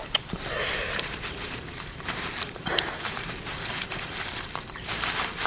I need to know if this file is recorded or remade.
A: remade